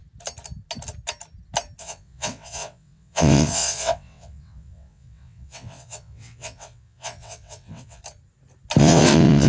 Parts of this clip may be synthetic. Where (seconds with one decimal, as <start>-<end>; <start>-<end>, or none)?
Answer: 1.8-8.0; 8.8-9.5

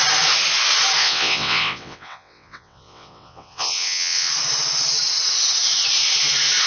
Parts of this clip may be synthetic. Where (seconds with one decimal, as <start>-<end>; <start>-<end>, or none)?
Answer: 1.0-4.3

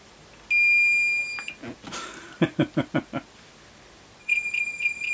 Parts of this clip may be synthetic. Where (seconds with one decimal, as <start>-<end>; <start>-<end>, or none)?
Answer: 4.2-5.1

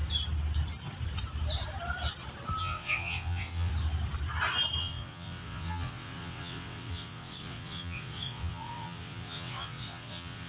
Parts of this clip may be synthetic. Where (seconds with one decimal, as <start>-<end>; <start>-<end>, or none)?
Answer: 2.6-3.7; 4.8-10.5